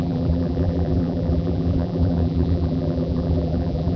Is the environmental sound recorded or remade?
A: remade